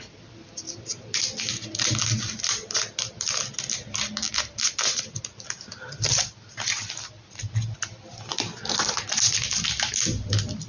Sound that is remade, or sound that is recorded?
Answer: recorded